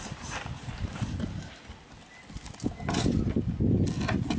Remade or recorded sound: recorded